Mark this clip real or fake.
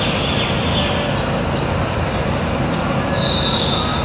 real